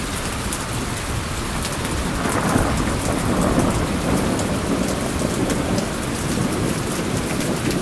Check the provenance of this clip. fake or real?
fake